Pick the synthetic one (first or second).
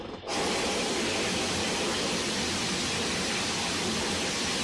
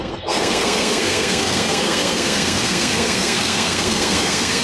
second